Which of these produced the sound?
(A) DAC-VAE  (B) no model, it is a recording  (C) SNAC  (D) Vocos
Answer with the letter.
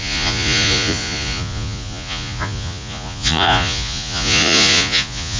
D